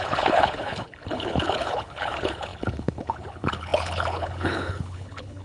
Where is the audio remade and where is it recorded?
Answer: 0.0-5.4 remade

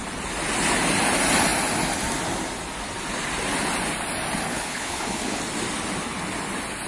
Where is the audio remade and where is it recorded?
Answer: 0.0-4.5 recorded; 4.5-5.4 remade; 5.4-6.9 recorded

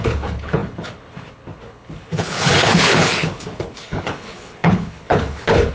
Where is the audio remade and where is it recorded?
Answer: 0.0-5.7 remade

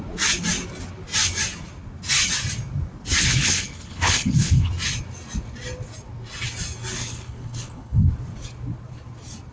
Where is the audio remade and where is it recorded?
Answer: 0.0-3.2 recorded; 3.2-4.7 remade; 4.7-7.0 recorded; 7.0-8.1 remade; 8.1-9.5 recorded